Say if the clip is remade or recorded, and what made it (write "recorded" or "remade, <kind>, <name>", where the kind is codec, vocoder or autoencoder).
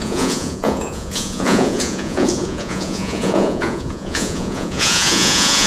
remade, vocoder, Vocos